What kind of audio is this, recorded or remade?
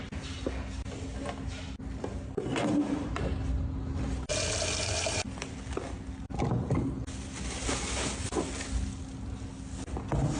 recorded